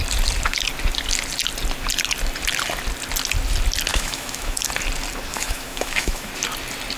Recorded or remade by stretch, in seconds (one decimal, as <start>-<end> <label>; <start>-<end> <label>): 0.0-3.9 recorded; 3.9-4.7 remade; 4.7-5.3 recorded; 5.3-6.3 remade; 6.3-7.0 recorded